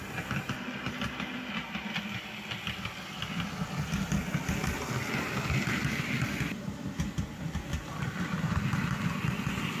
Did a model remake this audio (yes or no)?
no